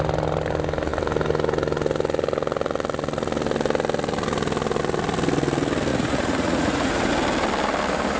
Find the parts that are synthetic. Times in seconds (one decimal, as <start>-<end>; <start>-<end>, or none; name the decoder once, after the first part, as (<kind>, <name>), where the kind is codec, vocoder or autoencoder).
5.9-7.1 (vocoder, Vocos)